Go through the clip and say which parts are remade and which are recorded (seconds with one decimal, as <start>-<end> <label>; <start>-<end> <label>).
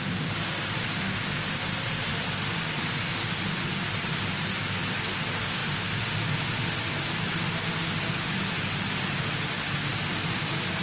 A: 0.0-2.1 recorded; 2.1-4.8 remade; 4.8-10.8 recorded